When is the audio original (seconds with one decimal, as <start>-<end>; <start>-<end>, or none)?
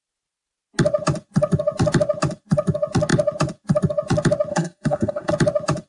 0.0-4.5; 5.3-5.9